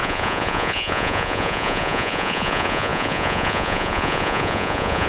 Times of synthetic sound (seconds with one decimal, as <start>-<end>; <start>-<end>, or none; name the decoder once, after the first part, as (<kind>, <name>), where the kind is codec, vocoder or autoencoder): 0.0-5.1 (vocoder, Vocos)